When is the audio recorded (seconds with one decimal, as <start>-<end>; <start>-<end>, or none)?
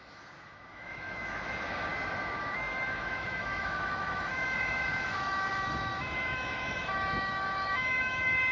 1.9-2.4